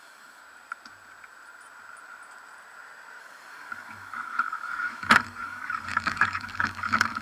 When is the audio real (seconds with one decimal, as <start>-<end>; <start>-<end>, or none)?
0.4-3.2

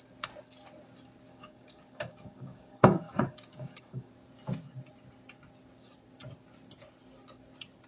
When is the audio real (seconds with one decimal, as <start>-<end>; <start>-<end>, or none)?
0.0-1.3; 4.1-7.9

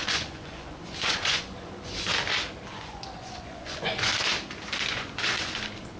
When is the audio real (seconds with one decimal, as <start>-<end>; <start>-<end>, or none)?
2.1-2.7; 4.1-4.9

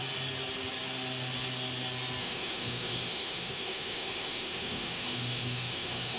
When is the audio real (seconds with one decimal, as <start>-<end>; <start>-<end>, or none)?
0.0-2.2

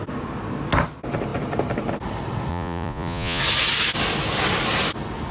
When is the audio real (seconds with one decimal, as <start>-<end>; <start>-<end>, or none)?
0.0-2.5; 3.4-5.3

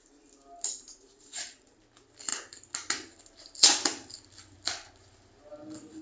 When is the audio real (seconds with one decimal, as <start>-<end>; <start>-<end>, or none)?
0.0-0.9; 1.8-6.0

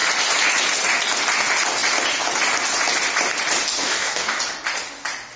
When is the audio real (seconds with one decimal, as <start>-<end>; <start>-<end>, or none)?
0.0-3.8; 4.4-5.4